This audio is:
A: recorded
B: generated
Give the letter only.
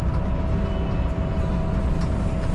A